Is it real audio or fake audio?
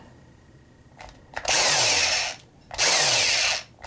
real